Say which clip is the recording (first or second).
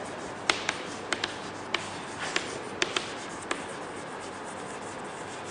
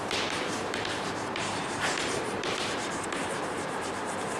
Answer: first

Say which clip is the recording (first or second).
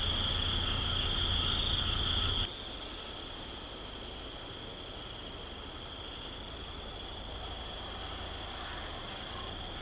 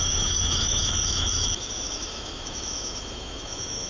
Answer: first